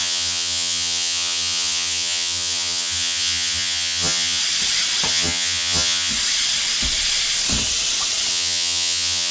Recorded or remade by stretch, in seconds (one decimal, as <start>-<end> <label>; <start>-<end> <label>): 0.0-4.4 remade; 4.4-5.1 recorded; 5.1-6.1 remade; 6.1-8.3 recorded; 8.3-9.3 remade